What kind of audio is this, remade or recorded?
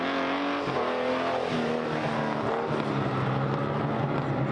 recorded